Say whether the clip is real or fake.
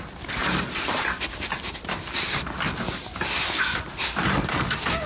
real